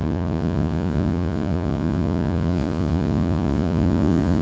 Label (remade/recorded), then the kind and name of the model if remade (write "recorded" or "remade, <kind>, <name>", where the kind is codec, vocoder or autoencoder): remade, vocoder, Vocos